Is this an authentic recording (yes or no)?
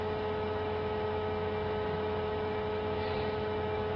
no